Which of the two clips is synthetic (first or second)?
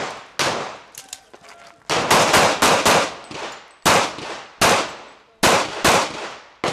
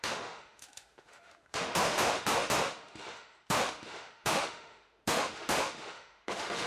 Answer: second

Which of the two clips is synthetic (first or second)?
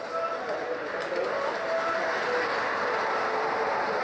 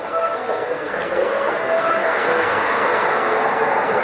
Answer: second